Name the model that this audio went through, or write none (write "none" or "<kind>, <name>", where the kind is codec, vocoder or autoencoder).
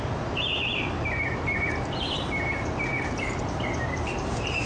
vocoder, BigVGAN v2